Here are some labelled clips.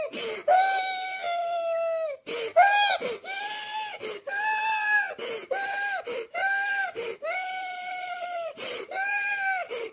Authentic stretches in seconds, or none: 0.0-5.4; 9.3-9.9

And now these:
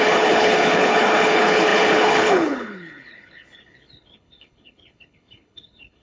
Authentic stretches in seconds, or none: none

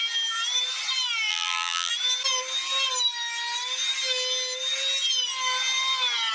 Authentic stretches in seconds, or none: 0.0-1.3; 1.9-6.3

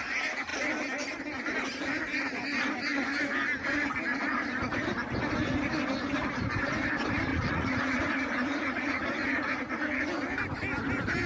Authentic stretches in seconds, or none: 0.0-7.3; 9.7-11.3

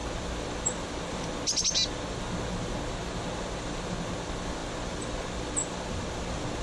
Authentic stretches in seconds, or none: 0.0-6.6

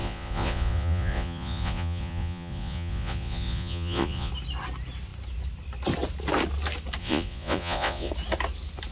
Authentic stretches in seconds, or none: 4.3-7.0; 8.1-8.9